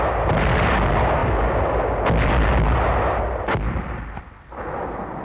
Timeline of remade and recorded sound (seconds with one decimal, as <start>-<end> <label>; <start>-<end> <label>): 0.0-5.2 recorded